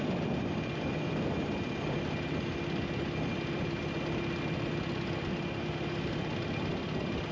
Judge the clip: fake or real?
real